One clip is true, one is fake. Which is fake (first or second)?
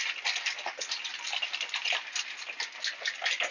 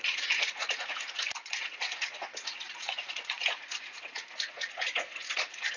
second